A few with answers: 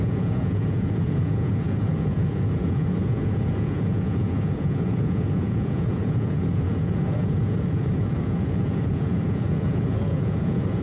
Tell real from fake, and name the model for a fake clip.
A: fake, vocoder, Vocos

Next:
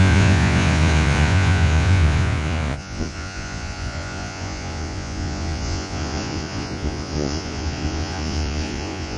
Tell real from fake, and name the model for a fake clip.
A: fake, vocoder, Vocos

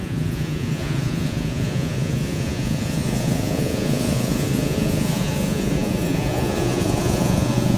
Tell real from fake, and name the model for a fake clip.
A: fake, vocoder, Vocos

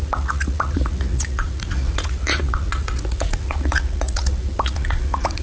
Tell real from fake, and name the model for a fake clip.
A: fake, vocoder, Vocos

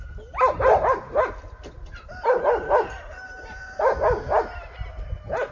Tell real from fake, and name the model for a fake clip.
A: real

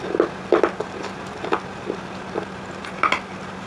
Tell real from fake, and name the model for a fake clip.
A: real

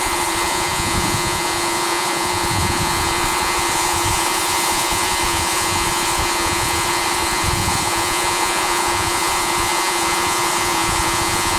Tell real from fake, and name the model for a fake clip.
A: fake, vocoder, Vocos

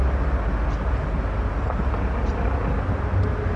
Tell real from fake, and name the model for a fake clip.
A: real